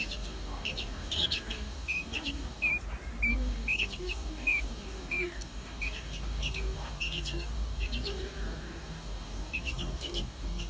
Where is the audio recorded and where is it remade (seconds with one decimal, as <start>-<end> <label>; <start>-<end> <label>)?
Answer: 0.0-2.7 remade; 2.7-3.3 recorded; 3.3-10.7 remade